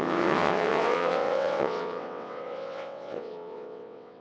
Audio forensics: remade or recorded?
remade